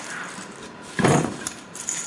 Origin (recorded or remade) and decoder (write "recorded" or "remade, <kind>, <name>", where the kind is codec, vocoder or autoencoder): remade, vocoder, BigVGAN v2